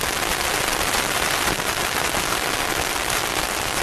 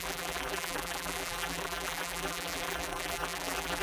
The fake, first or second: second